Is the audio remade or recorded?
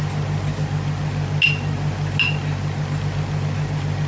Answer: recorded